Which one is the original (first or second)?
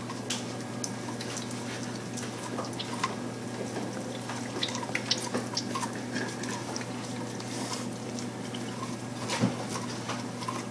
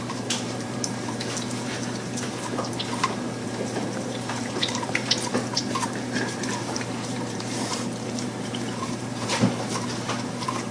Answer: first